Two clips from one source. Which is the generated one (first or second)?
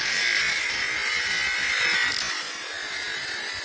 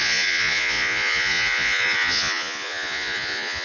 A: second